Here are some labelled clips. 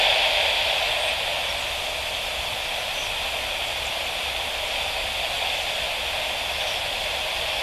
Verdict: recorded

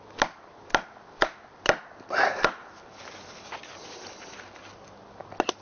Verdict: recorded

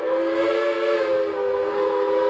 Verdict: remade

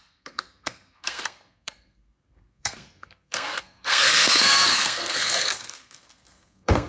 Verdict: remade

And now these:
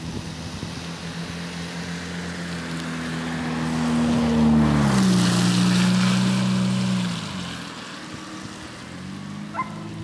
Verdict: recorded